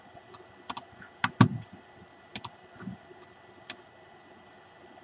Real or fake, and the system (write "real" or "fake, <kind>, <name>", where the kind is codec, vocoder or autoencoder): real